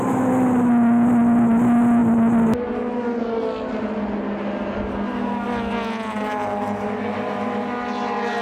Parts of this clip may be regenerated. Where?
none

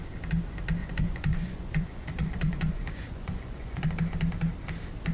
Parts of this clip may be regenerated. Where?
0.8-3.9 (vocoder, Vocos)

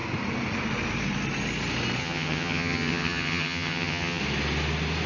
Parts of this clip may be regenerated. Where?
2.0-4.2 (vocoder, HiFi-GAN)

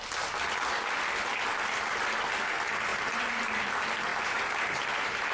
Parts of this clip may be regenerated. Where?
2.9-3.5 (vocoder, BigVGAN v2); 4.1-5.3

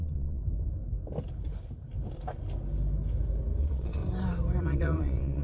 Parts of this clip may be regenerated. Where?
0.0-0.4 (vocoder, Vocos); 3.6-4.0; 4.6-5.4

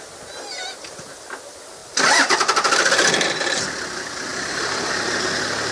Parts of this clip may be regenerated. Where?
1.8-3.6 (vocoder, BigVGAN v2); 4.3-4.9

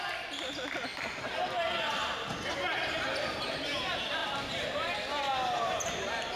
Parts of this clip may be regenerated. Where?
none

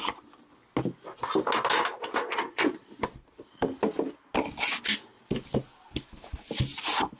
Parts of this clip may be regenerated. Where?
5.1-5.7 (vocoder, BigVGAN v2)